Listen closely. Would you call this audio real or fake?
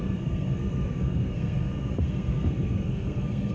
fake